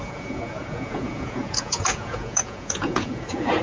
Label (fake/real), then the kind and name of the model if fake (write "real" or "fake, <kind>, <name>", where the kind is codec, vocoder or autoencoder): fake, vocoder, Vocos